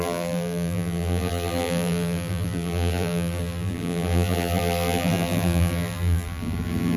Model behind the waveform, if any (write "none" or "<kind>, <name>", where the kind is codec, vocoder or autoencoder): vocoder, BigVGAN v2